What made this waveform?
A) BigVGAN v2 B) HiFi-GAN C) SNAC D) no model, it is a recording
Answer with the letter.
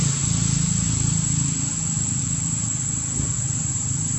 D